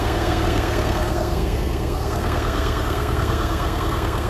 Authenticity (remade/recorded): remade